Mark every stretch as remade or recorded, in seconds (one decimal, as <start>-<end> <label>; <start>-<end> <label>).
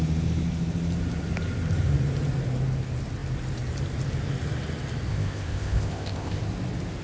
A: 0.0-5.1 recorded; 5.1-6.4 remade; 6.4-7.0 recorded